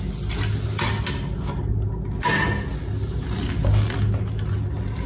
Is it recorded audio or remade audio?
recorded